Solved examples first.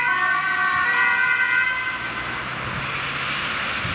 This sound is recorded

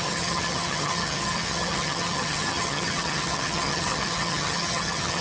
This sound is remade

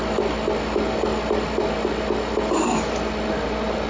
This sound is recorded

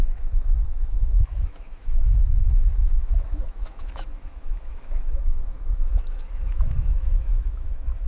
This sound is remade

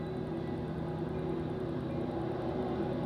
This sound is recorded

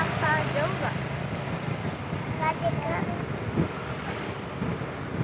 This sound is recorded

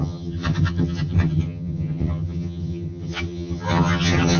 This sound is remade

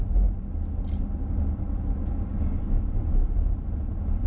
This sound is recorded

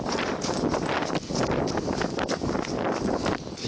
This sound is recorded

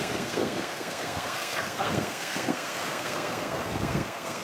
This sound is remade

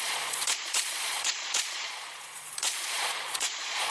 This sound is remade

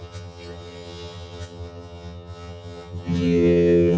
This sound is remade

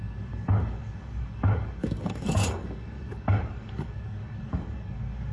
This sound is remade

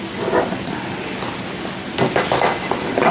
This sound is recorded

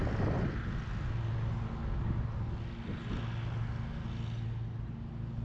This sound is recorded